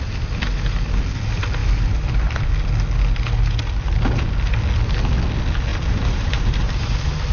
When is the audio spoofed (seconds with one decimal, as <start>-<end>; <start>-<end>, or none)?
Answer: 1.6-2.5; 5.7-6.8